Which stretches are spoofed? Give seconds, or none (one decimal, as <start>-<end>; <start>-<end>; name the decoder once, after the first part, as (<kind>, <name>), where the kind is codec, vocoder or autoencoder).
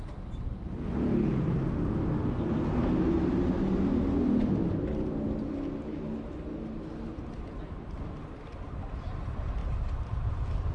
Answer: 9.6-10.7 (vocoder, BigVGAN v2)